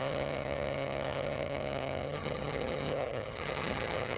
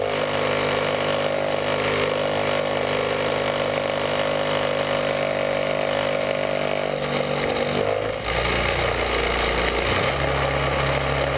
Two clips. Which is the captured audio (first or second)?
second